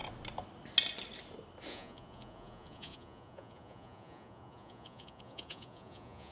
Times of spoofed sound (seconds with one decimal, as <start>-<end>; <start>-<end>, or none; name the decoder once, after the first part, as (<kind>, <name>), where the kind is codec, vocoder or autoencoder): 1.7-6.3 (vocoder, Vocos)